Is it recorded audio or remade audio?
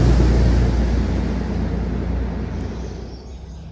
recorded